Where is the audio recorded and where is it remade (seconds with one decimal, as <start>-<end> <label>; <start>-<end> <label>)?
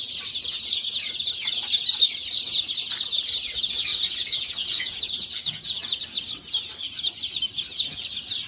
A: 0.0-3.9 recorded; 3.9-6.0 remade; 6.0-8.5 recorded